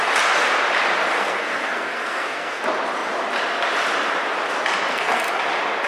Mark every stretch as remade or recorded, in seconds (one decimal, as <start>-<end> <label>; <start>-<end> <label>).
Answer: 0.0-1.1 recorded; 1.1-2.6 remade; 2.6-4.9 recorded; 4.9-5.4 remade; 5.4-5.9 recorded